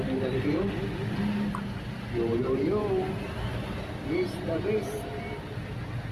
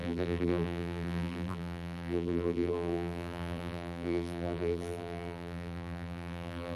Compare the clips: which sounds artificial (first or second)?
second